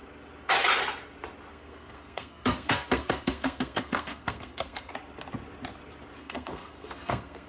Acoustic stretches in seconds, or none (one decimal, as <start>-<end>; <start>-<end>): 0.0-1.5; 4.9-6.2